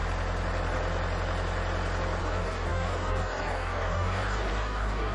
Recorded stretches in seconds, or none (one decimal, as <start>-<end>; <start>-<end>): 0.0-2.2